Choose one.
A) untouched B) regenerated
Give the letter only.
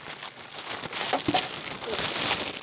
A